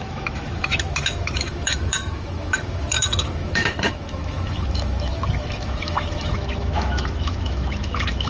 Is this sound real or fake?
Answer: fake